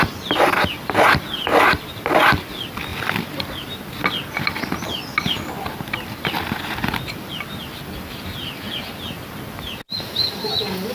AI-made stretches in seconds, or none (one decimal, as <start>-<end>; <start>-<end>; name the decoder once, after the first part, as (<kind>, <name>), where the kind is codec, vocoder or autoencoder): none